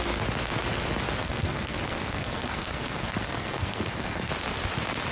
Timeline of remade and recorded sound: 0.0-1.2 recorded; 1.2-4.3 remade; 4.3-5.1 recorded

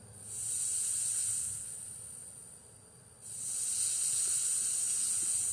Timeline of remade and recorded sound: 0.0-5.5 recorded

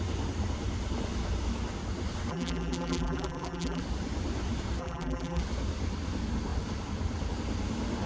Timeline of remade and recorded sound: 0.0-2.3 recorded; 2.3-3.8 remade; 3.8-4.8 recorded; 4.8-5.4 remade; 5.4-8.1 recorded

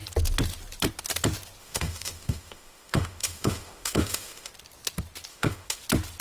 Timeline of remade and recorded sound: 0.0-1.6 recorded; 1.6-4.5 remade; 4.5-5.3 recorded; 5.3-5.8 remade; 5.8-6.2 recorded

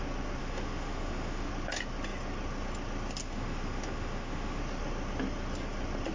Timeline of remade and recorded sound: 0.0-0.4 recorded; 0.4-1.5 remade; 1.5-3.2 recorded; 3.2-4.6 remade; 4.6-6.1 recorded

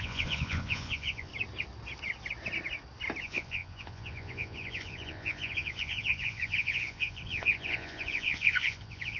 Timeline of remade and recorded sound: 0.0-1.3 remade; 1.3-3.2 recorded; 3.2-9.2 remade